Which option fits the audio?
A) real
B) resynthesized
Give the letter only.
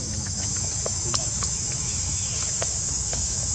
B